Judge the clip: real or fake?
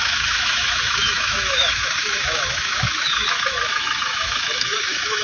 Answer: fake